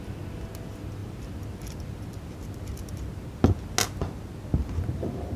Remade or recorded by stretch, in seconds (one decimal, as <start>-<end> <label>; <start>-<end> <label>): 0.0-5.4 recorded